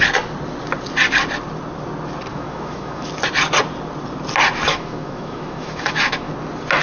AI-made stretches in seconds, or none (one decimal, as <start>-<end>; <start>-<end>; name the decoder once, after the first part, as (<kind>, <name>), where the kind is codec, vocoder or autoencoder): 2.3-3.1 (autoencoder, DAC-VAE); 4.7-6.3